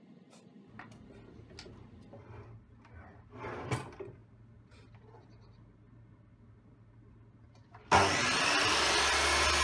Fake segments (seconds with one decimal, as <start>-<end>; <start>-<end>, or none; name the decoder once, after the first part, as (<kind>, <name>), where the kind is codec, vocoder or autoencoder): none